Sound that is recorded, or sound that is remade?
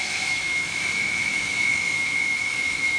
remade